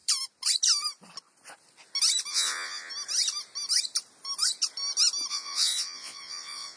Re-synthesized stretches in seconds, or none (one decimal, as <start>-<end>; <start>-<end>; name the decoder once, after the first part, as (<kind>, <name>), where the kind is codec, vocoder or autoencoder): 2.3-2.9 (vocoder, Vocos); 5.3-6.8